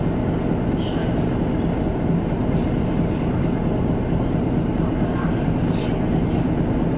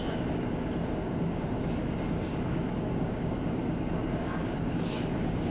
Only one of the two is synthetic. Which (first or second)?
second